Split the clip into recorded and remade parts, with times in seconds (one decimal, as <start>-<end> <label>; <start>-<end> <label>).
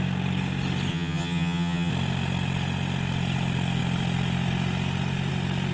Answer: 0.0-0.9 recorded; 0.9-1.9 remade; 1.9-5.7 recorded